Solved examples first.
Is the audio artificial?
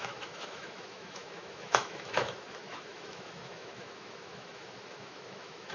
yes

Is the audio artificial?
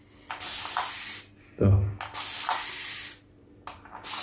no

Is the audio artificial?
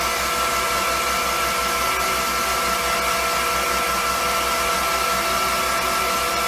no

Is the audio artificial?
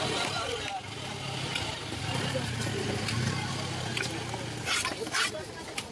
no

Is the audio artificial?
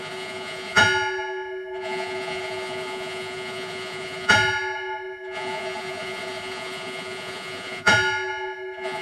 yes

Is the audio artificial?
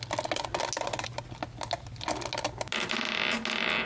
no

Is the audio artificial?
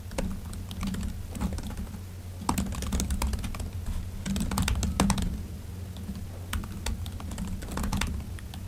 no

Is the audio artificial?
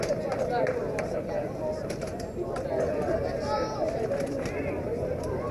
no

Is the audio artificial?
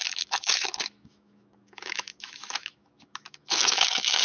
yes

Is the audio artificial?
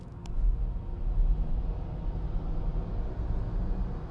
no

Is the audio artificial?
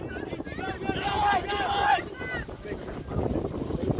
no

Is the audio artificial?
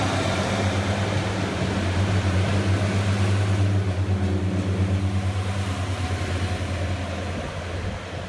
no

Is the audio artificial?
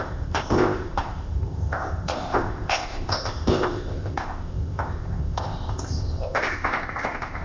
yes